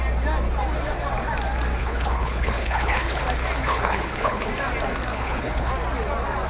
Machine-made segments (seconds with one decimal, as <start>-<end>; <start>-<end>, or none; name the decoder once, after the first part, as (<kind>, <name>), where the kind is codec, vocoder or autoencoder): 1.8-3.2 (codec, HILCodec); 3.6-4.5; 5.1-5.7